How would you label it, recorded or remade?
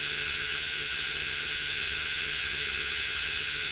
remade